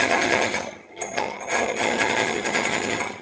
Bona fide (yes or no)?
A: no